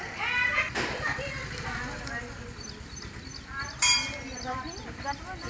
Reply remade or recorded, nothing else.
recorded